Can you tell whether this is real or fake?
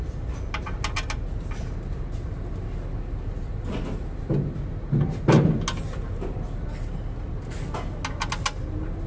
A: real